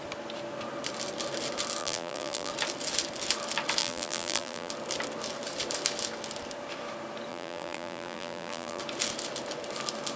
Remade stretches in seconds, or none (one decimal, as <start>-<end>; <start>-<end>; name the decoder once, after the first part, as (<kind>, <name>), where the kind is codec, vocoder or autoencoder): 1.8-2.5 (vocoder, BigVGAN v2); 3.8-4.7; 7.3-8.8